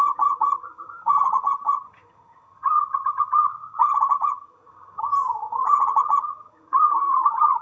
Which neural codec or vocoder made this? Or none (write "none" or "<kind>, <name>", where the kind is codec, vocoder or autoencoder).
vocoder, HiFi-GAN